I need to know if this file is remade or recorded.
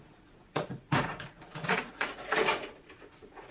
remade